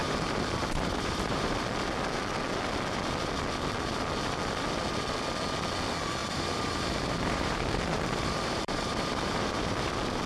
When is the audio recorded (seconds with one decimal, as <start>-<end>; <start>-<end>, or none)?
1.6-6.2; 9.9-10.3